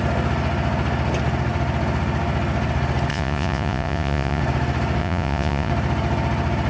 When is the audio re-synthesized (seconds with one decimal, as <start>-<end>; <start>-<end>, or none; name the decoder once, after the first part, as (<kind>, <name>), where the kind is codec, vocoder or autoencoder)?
3.1-4.4 (vocoder, Vocos); 5.0-5.7